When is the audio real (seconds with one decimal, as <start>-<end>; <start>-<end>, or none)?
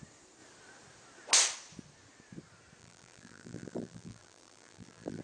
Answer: 0.0-2.8